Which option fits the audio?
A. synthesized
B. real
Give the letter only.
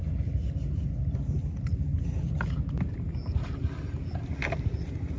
B